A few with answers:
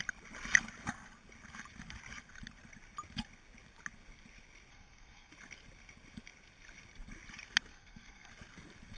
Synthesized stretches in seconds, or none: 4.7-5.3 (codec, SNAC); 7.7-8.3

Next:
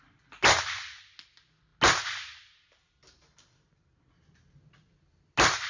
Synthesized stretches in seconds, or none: none

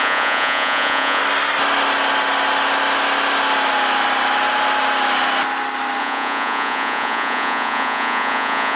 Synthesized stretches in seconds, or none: 0.0-1.2 (vocoder, Vocos); 6.0-8.8

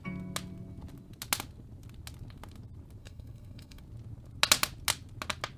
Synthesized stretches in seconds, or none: 3.0-3.8 (codec, SNAC)

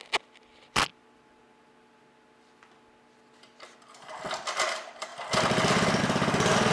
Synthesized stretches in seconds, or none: none

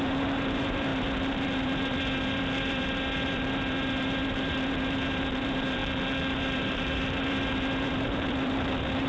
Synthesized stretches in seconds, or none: 0.0-5.8 (vocoder, BigVGAN v2); 6.3-9.1

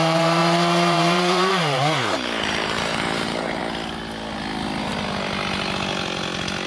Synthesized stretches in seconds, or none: 0.0-3.6 (vocoder, BigVGAN v2)